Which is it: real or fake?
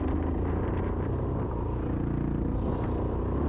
real